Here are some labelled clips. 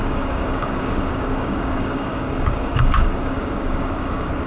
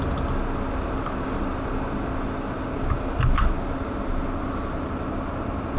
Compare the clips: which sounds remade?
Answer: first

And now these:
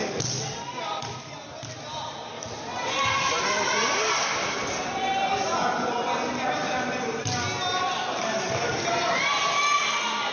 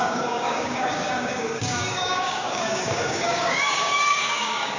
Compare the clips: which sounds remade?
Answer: second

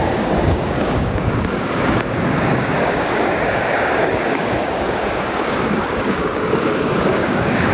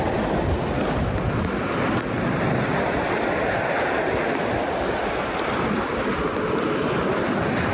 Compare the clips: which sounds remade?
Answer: first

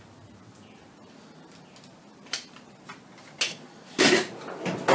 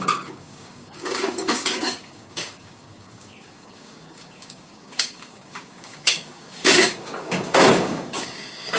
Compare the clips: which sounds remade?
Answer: second